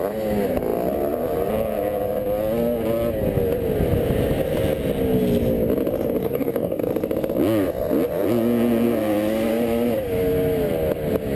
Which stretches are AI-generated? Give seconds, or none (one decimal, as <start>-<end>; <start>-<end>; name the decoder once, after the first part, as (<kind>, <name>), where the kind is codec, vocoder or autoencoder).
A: 6.2-6.9 (codec, DAC)